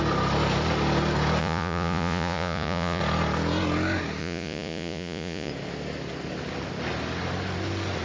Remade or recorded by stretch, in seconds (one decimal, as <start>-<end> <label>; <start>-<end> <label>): 0.0-1.4 recorded; 1.4-3.0 remade; 3.0-4.2 recorded; 4.2-5.5 remade; 5.5-8.0 recorded